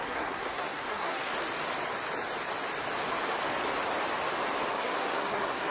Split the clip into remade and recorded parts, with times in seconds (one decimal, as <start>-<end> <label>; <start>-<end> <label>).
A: 0.0-1.3 remade; 1.3-4.7 recorded; 4.7-5.7 remade